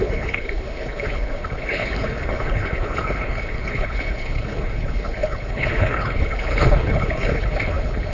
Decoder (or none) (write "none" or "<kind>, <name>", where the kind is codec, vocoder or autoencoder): codec, HILCodec